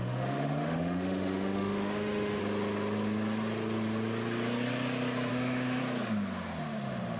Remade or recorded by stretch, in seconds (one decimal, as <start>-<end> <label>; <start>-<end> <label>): 0.0-2.4 remade; 2.4-5.3 recorded; 5.3-5.8 remade; 5.8-6.6 recorded; 6.6-7.2 remade